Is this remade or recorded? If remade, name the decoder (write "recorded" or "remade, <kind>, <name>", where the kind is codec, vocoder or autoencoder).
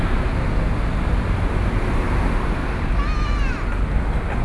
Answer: recorded